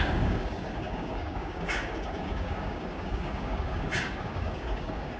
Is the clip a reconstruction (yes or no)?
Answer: yes